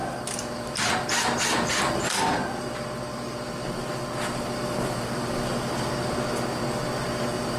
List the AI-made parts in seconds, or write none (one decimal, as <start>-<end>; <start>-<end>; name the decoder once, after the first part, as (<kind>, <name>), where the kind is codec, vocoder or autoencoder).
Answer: none